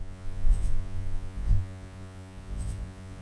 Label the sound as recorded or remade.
remade